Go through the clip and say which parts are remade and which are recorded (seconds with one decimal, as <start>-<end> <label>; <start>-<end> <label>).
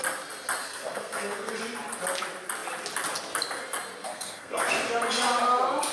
0.0-0.6 recorded; 0.6-1.6 remade; 1.6-4.0 recorded; 4.0-4.6 remade; 4.6-5.9 recorded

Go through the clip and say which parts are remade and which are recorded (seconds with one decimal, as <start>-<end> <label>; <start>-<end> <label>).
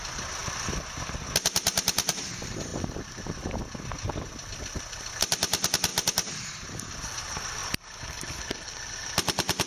0.0-9.7 recorded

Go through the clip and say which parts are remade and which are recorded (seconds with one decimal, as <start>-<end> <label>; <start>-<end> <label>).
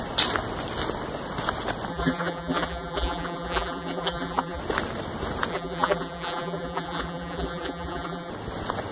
0.0-1.9 recorded; 1.9-4.6 remade; 4.6-5.5 recorded; 5.5-8.3 remade; 8.3-8.9 recorded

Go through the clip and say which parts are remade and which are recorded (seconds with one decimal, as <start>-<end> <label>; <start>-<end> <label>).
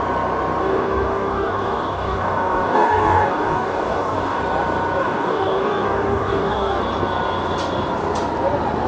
0.0-0.6 recorded; 0.6-4.4 remade; 4.4-5.0 recorded; 5.0-6.8 remade; 6.8-8.9 recorded